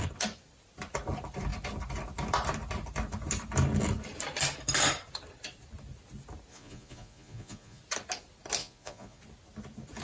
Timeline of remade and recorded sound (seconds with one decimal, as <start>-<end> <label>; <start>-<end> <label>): 0.0-6.5 recorded; 6.5-7.8 remade; 7.8-8.6 recorded; 8.6-9.2 remade; 9.2-10.0 recorded